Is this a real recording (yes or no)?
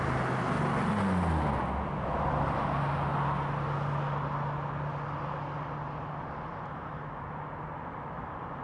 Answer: yes